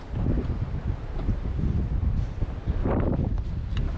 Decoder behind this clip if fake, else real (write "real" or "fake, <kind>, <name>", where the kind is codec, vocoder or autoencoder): real